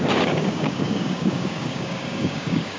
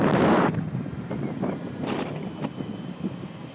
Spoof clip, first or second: first